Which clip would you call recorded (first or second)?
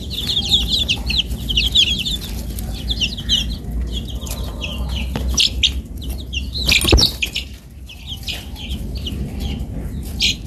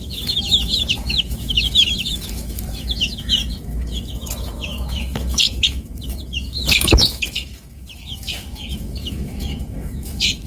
first